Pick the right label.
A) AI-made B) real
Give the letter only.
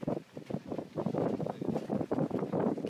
B